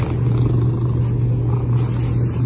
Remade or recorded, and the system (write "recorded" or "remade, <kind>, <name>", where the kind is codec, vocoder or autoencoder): recorded